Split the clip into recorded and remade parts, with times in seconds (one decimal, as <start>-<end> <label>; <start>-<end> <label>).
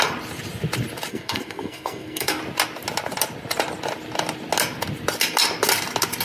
0.0-1.1 recorded; 1.1-2.4 remade; 2.4-6.2 recorded